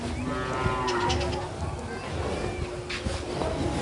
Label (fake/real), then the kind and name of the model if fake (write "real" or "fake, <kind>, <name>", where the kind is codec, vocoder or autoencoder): real